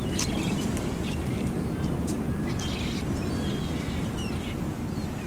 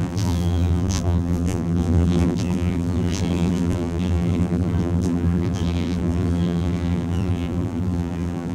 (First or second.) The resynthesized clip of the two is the second